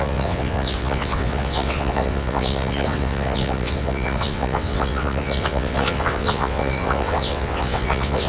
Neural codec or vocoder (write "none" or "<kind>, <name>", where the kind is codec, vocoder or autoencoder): vocoder, WaveNeXt